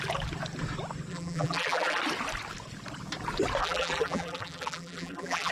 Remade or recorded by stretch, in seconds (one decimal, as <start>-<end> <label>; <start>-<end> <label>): 0.0-1.1 recorded; 1.1-2.0 remade; 2.0-3.6 recorded; 3.6-5.5 remade